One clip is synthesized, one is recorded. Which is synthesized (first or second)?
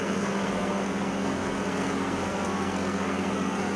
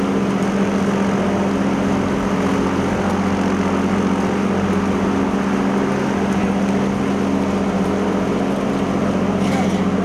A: first